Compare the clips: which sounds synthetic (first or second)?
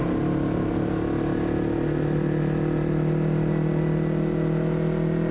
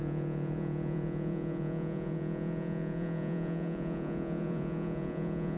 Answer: second